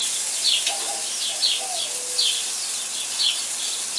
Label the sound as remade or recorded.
recorded